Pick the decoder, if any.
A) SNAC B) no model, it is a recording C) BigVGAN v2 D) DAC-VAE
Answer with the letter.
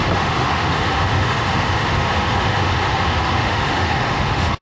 D